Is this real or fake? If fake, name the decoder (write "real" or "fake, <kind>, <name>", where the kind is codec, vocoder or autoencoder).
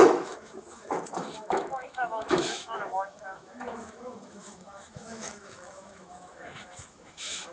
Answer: fake, autoencoder, DAC-VAE